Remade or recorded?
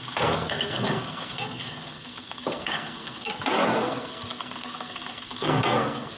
remade